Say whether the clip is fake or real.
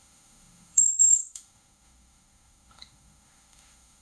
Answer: fake